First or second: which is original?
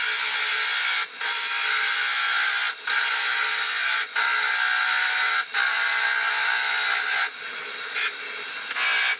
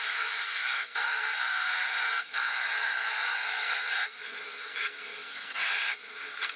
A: first